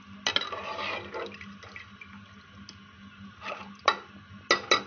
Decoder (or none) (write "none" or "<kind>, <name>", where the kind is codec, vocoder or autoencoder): none